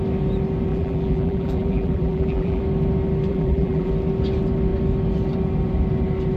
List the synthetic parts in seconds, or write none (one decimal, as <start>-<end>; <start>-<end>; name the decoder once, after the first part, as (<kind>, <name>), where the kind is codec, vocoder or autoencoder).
0.7-2.6 (vocoder, BigVGAN v2); 3.3-3.9